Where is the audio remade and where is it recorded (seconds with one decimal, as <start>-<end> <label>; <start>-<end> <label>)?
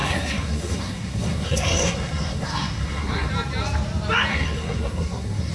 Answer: 0.0-3.3 remade; 3.3-4.3 recorded; 4.3-5.5 remade